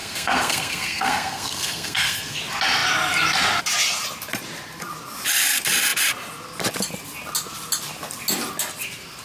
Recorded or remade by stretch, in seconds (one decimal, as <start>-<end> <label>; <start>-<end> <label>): 0.0-2.4 remade; 2.4-9.2 recorded